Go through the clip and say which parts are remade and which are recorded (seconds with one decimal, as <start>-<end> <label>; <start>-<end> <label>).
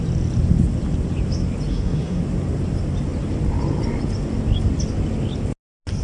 0.0-1.7 recorded; 1.7-2.2 remade; 2.2-6.0 recorded